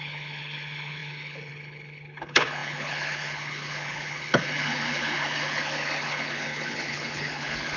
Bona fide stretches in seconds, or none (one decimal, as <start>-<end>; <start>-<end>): none

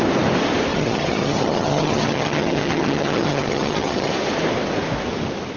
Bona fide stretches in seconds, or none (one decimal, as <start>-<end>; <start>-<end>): 0.0-0.7; 4.1-5.6

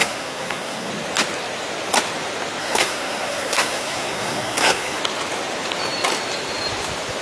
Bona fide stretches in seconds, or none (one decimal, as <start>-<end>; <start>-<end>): 0.9-2.6; 5.0-7.2

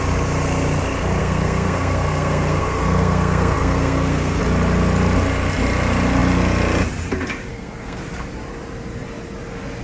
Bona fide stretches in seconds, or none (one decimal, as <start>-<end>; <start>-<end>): 0.0-1.2; 4.4-7.5; 8.0-9.8